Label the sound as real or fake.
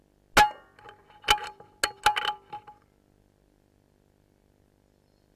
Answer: real